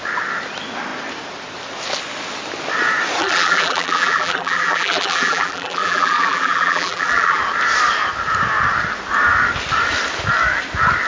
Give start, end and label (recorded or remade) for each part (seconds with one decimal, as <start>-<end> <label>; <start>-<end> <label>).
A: 0.0-3.2 recorded; 3.2-7.4 remade; 7.4-11.1 recorded